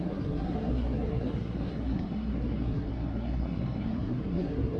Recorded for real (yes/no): no